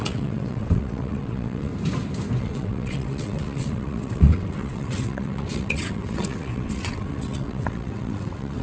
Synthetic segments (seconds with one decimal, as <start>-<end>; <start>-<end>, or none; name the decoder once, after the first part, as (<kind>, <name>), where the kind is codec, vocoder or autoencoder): 0.0-1.7 (vocoder, WaveNeXt); 2.4-8.6